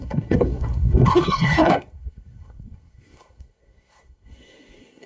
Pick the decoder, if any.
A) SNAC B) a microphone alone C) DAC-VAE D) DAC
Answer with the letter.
A